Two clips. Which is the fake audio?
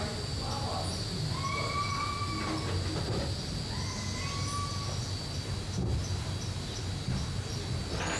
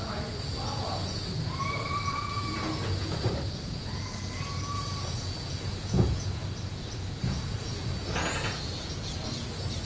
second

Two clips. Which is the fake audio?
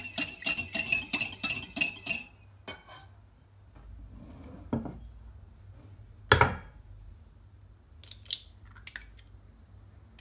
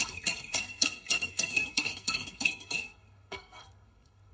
second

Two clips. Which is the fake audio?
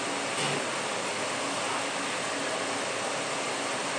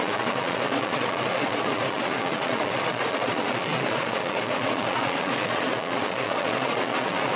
second